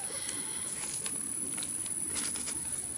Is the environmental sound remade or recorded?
recorded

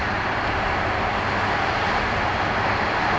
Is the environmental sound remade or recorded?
recorded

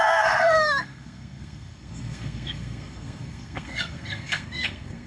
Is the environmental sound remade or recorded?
remade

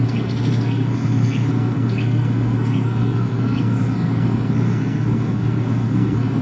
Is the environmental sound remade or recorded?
remade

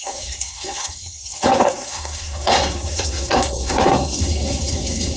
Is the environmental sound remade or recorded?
remade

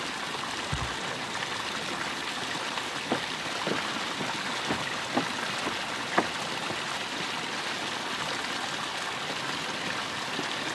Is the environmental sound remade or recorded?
recorded